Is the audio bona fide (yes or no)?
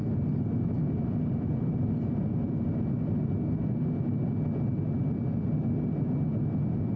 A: yes